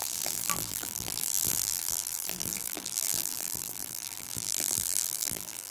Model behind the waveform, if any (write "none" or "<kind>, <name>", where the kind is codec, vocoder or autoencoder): vocoder, BigVGAN v2